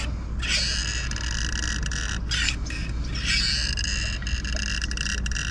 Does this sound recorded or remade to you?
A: recorded